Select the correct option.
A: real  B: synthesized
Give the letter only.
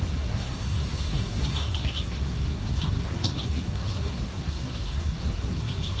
B